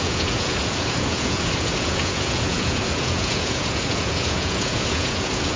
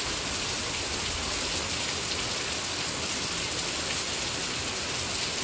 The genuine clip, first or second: second